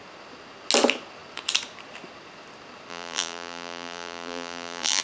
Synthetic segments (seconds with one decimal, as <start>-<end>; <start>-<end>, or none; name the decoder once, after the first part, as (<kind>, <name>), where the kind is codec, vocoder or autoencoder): 2.9-5.0 (vocoder, BigVGAN v2)